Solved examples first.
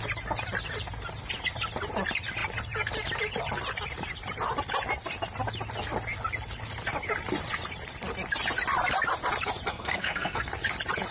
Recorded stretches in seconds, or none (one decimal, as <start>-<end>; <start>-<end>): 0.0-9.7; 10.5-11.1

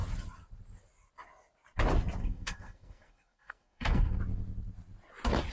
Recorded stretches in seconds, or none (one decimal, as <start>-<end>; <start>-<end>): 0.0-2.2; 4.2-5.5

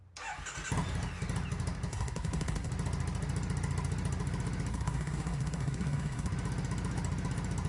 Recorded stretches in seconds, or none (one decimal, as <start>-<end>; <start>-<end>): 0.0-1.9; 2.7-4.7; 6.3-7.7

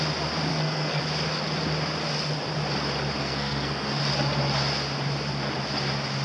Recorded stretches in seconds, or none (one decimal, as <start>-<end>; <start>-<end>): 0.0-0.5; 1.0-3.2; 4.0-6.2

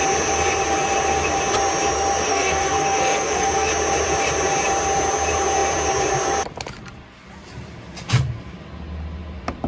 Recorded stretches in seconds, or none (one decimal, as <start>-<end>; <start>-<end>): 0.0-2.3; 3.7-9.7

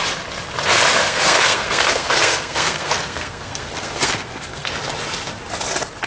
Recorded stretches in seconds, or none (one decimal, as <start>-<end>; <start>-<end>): 0.0-1.0; 4.7-6.1

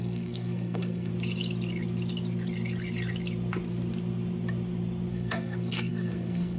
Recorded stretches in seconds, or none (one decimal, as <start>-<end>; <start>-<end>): 1.1-5.1